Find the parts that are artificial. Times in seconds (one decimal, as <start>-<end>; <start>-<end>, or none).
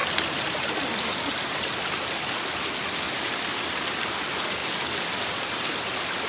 none